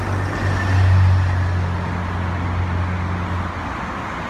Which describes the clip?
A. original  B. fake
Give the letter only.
A